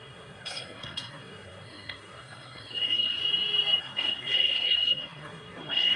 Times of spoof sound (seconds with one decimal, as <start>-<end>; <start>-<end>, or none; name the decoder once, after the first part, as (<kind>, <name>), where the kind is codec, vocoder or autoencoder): 0.0-3.2 (codec, SNAC); 3.8-6.0

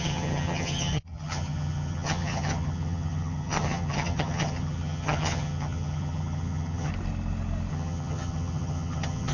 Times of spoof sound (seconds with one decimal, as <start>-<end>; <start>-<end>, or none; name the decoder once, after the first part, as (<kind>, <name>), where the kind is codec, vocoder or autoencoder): 0.0-6.9 (vocoder, HiFi-GAN); 7.7-9.3

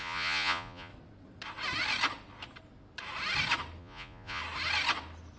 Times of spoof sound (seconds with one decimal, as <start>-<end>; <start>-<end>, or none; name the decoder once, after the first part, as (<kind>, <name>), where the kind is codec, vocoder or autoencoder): 0.0-0.9 (vocoder, Vocos); 3.8-4.4